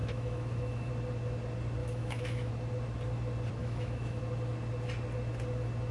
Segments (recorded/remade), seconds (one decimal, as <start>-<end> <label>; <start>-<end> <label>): 0.0-0.9 remade; 0.9-1.8 recorded; 1.8-2.5 remade; 2.5-3.6 recorded; 3.6-4.2 remade; 4.2-5.9 recorded